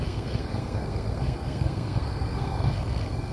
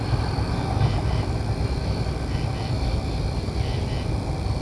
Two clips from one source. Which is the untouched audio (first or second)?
second